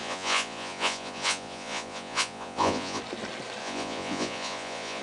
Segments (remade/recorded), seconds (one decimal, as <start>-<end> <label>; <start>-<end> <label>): 0.0-3.0 remade; 3.0-3.6 recorded; 3.6-5.0 remade

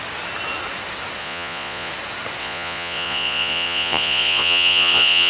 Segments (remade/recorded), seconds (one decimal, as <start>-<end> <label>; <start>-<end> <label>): 0.0-1.2 recorded; 1.2-1.9 remade; 1.9-2.4 recorded; 2.4-5.3 remade

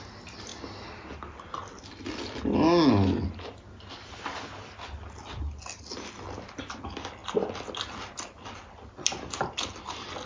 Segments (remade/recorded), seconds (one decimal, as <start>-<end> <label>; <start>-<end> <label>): 0.0-10.3 recorded

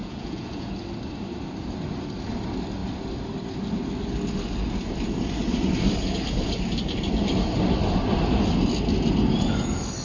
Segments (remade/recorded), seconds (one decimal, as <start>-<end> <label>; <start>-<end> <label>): 0.0-0.7 remade; 0.7-10.0 recorded

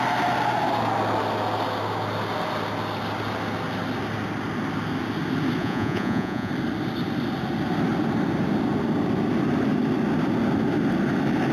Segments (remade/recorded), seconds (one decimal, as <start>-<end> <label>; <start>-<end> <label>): 0.0-5.6 recorded; 5.6-6.5 remade; 6.5-11.5 recorded

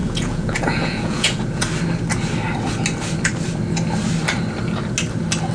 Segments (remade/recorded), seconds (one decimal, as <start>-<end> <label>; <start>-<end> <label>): 0.0-1.4 remade; 1.4-5.5 recorded